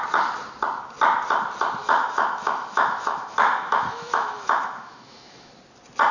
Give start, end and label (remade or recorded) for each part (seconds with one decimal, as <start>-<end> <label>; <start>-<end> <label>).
0.0-1.8 recorded; 1.8-5.5 remade; 5.5-6.1 recorded